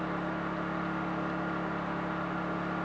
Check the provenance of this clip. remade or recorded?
recorded